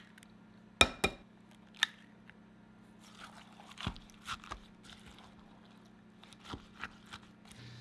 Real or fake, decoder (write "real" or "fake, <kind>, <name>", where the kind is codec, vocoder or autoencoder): real